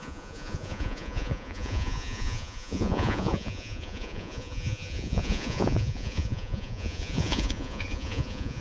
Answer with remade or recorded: remade